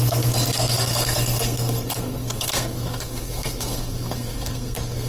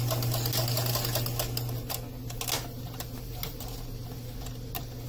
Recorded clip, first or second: second